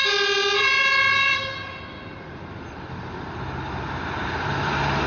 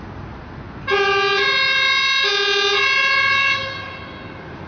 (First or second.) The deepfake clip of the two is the first